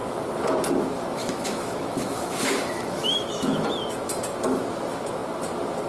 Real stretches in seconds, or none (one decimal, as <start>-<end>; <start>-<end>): 0.0-1.2; 3.7-5.9